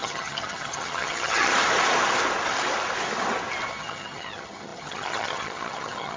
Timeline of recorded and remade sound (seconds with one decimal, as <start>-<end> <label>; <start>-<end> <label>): 0.0-1.5 remade; 1.5-3.7 recorded; 3.7-6.2 remade